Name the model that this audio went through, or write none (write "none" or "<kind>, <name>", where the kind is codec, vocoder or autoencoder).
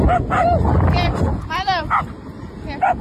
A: none